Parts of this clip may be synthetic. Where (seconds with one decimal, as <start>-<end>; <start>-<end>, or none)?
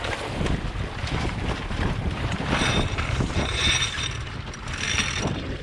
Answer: 1.0-3.8